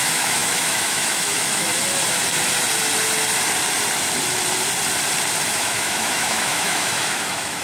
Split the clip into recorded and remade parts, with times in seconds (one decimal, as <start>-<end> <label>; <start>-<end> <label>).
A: 0.0-1.7 remade; 1.7-5.5 recorded; 5.5-7.6 remade